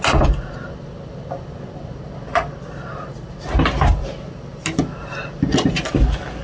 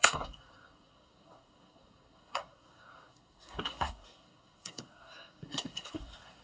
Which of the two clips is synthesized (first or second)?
second